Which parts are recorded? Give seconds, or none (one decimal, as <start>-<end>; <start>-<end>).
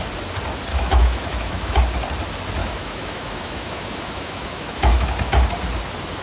0.0-0.7; 1.8-2.6; 5.4-6.2